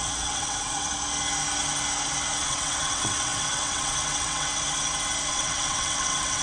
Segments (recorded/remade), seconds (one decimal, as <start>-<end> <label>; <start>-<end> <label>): 0.0-0.9 remade; 0.9-2.4 recorded; 2.4-4.5 remade; 4.5-5.3 recorded; 5.3-6.4 remade